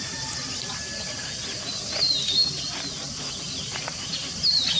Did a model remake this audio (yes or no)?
no